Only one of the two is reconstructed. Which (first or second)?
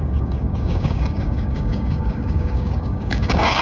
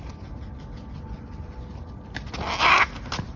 first